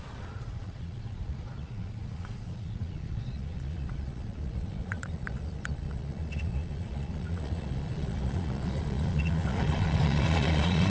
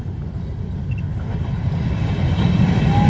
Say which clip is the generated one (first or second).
first